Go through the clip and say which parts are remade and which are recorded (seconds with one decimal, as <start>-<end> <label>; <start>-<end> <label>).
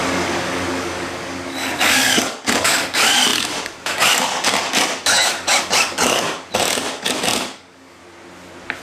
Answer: 0.0-8.0 remade; 8.0-8.8 recorded